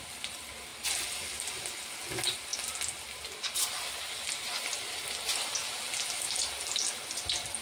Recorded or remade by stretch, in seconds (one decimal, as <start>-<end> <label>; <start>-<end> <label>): 0.0-7.6 recorded